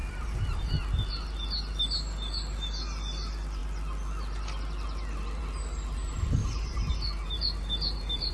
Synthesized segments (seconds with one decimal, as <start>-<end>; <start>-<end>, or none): 0.0-0.6; 6.4-8.3